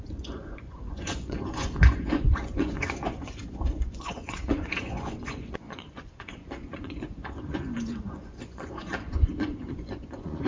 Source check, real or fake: fake